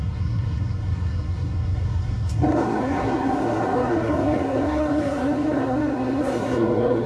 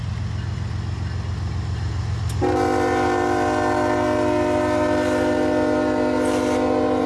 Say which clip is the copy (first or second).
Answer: first